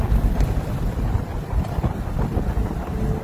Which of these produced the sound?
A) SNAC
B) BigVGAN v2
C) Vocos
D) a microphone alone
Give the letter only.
D